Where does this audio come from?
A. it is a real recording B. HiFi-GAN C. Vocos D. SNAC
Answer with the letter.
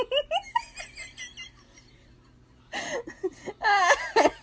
A